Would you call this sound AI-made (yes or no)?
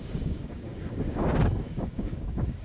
yes